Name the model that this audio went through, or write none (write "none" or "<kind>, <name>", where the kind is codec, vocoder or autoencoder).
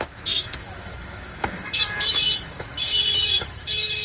autoencoder, DAC-VAE